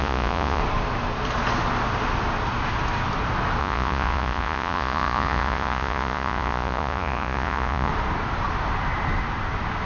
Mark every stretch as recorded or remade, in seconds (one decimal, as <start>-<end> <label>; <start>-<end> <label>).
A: 0.0-0.6 remade; 0.6-3.6 recorded; 3.6-7.9 remade; 7.9-9.9 recorded